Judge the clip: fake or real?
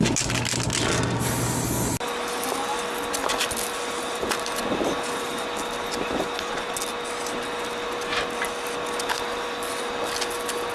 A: real